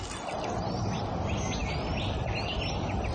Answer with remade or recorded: recorded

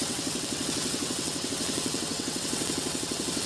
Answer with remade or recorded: remade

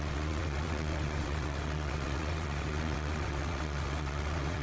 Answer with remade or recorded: remade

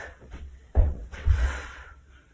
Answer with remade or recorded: remade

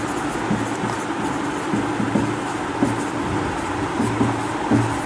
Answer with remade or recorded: recorded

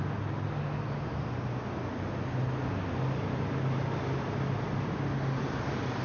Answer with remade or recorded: recorded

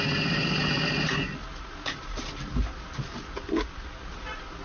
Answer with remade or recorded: recorded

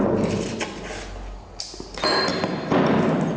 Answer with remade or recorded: recorded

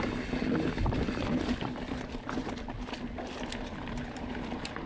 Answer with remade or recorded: recorded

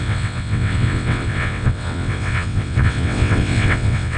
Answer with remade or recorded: remade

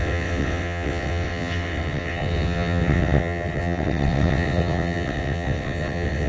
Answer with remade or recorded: remade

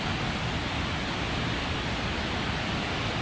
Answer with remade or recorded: recorded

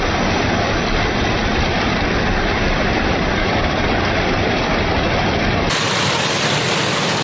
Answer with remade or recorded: recorded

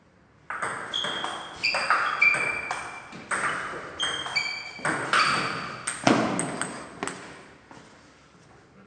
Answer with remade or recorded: recorded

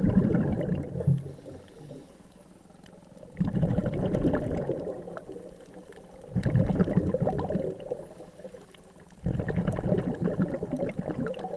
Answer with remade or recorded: recorded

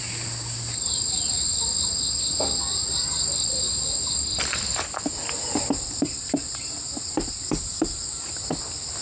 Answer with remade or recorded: recorded